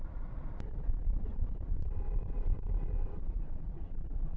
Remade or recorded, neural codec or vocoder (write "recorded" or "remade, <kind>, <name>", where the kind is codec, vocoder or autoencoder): remade, vocoder, Vocos